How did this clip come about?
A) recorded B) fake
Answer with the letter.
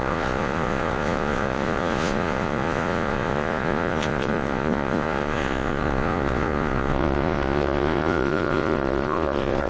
B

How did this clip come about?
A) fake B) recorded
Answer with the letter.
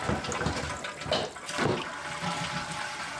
B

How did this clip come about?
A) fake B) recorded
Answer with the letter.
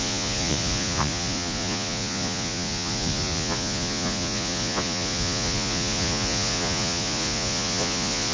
A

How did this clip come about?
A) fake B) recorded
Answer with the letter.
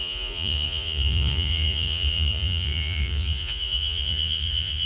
A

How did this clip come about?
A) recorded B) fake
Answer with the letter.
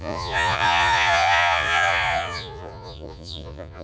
B